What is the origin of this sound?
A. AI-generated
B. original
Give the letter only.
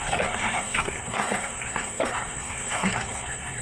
A